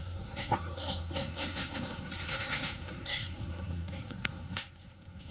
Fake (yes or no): yes